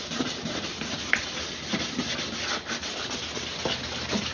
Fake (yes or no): no